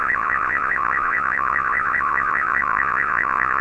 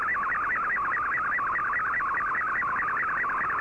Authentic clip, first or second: second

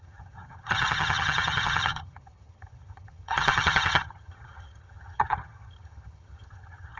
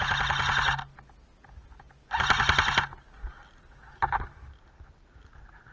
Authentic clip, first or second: second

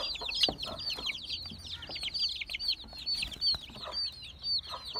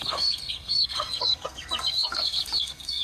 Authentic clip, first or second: first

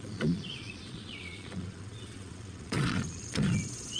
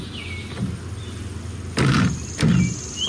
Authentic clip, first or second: second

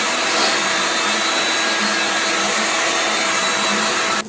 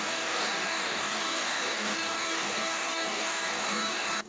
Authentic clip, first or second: first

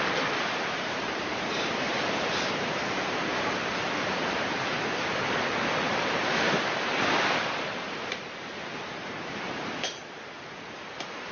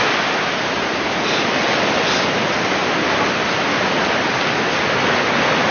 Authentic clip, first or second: second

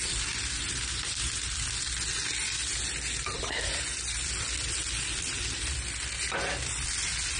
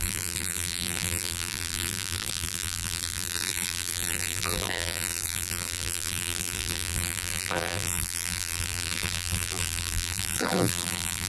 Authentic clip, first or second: first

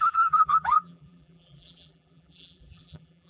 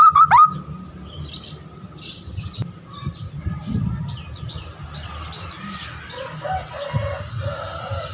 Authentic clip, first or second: second